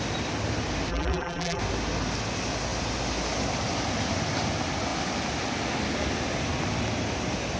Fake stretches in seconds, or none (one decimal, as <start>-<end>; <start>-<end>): 0.9-1.6